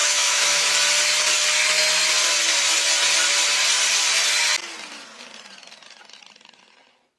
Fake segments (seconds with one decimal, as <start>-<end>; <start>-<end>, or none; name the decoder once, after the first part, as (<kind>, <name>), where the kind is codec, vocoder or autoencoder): 0.0-0.7 (autoencoder, DAC-VAE)